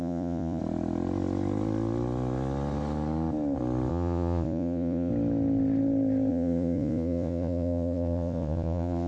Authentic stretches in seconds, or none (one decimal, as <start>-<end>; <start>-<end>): 0.6-3.9; 5.1-6.3